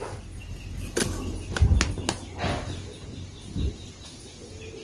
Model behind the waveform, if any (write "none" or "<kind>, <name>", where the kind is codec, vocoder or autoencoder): none